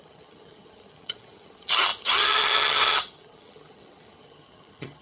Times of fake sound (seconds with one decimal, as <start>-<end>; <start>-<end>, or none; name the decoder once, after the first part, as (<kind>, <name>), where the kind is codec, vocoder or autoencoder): 0.0-5.0 (vocoder, HiFi-GAN)